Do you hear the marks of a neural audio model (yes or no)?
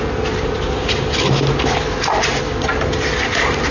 no